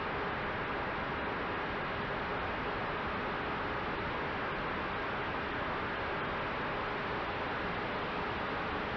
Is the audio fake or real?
real